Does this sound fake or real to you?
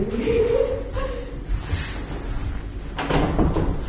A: real